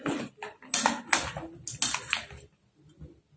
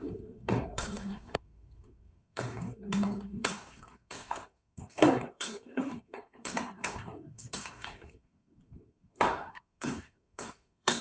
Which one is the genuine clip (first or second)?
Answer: first